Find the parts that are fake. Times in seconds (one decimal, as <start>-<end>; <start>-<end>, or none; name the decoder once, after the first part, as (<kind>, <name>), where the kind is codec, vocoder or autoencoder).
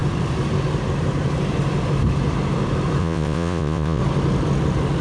3.0-4.0 (vocoder, Vocos)